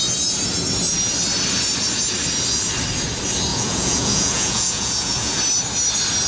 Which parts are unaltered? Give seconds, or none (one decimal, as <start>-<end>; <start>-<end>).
0.0-3.5; 5.4-6.3